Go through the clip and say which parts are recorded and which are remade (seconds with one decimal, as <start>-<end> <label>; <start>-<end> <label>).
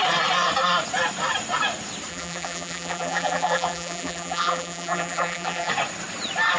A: 0.0-2.1 recorded; 2.1-5.7 remade; 5.7-6.6 recorded